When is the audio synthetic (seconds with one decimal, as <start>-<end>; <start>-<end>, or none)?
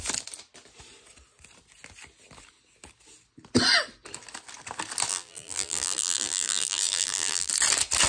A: 5.1-7.5